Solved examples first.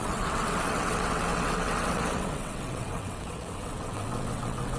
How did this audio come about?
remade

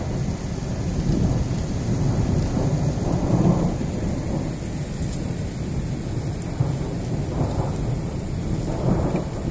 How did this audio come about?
recorded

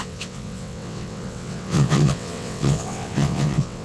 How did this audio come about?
remade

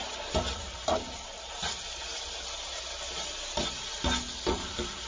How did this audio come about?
recorded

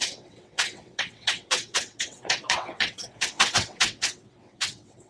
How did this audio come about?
remade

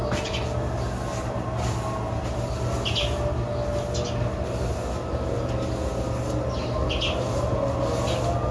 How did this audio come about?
recorded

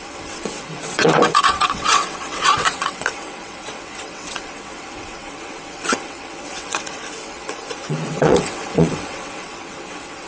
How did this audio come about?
remade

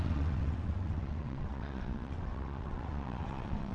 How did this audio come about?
remade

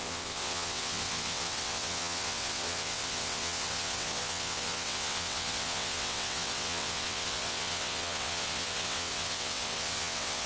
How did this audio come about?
remade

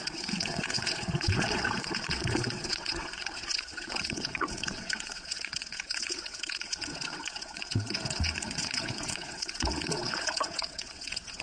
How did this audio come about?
remade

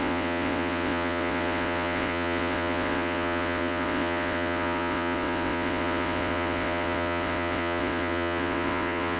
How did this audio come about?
remade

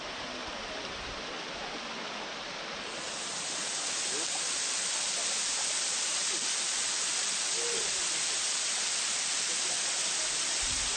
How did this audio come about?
recorded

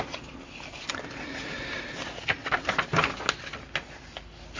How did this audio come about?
recorded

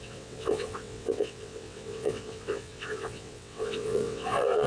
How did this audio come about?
remade